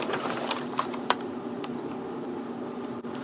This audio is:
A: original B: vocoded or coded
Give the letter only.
B